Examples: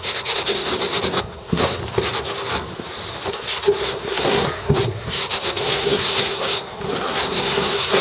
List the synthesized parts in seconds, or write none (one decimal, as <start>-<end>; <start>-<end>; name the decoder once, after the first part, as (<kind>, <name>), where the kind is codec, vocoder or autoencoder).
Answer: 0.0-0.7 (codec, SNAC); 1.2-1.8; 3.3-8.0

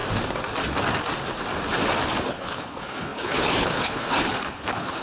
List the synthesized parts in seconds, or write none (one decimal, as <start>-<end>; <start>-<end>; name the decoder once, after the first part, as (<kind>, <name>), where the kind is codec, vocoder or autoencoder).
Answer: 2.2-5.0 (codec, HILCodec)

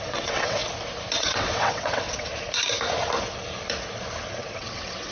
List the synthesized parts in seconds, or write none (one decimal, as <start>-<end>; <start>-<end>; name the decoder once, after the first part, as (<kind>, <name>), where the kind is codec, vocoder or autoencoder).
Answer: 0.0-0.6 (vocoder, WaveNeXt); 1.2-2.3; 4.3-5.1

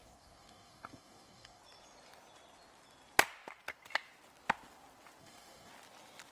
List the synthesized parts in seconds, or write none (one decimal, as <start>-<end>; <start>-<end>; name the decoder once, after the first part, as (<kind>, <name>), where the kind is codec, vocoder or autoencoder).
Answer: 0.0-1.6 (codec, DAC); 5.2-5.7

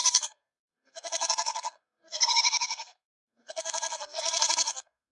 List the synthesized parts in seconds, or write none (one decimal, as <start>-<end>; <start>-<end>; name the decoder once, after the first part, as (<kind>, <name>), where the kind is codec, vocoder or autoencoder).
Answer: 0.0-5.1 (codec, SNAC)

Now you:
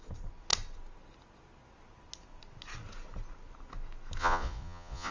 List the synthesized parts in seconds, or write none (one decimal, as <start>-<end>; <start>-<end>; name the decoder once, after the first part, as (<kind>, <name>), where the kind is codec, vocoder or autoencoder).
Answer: 4.2-5.1 (vocoder, Vocos)

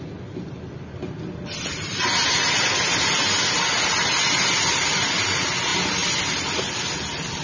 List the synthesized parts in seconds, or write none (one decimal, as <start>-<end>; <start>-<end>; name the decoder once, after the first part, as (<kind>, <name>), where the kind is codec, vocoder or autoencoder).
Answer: none

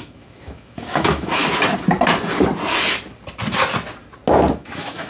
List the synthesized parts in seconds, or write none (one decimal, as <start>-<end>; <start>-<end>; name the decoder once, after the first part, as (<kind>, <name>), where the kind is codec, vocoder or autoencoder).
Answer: 0.0-1.4 (autoencoder, DAC-VAE); 4.5-5.1